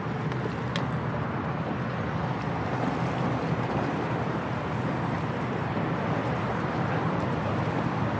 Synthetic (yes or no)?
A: no